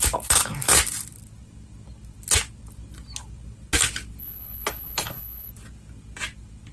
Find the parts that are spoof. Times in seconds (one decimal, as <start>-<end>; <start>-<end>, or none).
4.2-5.5